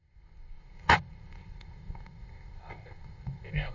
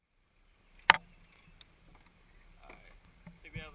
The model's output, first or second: first